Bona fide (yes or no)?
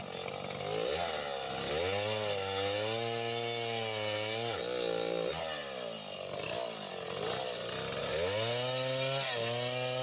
yes